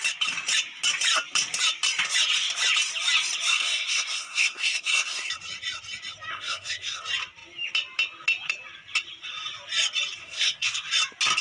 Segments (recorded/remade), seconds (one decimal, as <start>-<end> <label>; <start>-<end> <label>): 0.0-3.5 recorded; 3.5-5.3 remade; 5.3-6.3 recorded; 6.3-7.0 remade; 7.0-10.2 recorded; 10.2-10.9 remade; 10.9-11.4 recorded

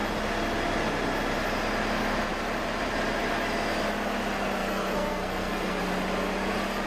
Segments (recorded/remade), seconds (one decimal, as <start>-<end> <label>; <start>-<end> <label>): 0.0-4.6 recorded; 4.6-5.8 remade; 5.8-6.9 recorded

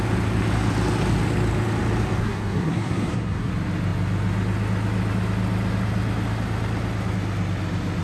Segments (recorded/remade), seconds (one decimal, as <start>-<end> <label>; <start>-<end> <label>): 0.0-2.2 recorded; 2.2-3.5 remade; 3.5-8.0 recorded

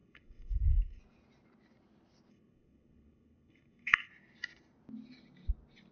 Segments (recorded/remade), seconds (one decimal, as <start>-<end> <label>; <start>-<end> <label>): 0.0-1.0 remade; 1.0-2.3 recorded; 2.3-4.1 remade; 4.1-5.9 recorded

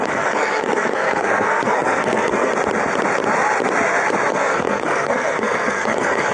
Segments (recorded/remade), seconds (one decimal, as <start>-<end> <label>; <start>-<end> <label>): 0.0-2.5 remade; 2.5-4.3 recorded; 4.3-6.3 remade